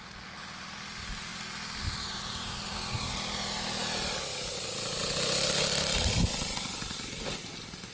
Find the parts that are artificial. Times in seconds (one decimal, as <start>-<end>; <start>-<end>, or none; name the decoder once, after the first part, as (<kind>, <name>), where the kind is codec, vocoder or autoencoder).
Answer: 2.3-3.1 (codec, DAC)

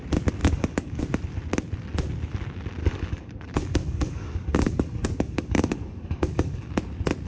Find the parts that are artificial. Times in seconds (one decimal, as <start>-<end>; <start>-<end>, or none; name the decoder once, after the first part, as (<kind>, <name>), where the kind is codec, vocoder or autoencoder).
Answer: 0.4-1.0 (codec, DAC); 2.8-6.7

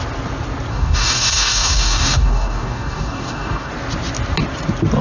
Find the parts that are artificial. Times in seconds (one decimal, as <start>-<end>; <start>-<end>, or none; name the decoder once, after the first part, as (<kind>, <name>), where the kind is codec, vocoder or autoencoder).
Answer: 0.7-3.7 (codec, DAC)

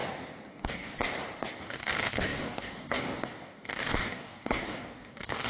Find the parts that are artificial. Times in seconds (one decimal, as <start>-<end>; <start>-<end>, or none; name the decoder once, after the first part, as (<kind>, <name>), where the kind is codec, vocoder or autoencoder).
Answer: 0.5-0.9 (codec, DAC); 1.6-5.5